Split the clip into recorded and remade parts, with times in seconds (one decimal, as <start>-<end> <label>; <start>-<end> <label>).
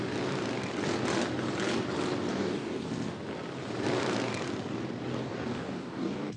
0.0-2.3 recorded; 2.3-2.9 remade; 2.9-5.2 recorded; 5.2-6.4 remade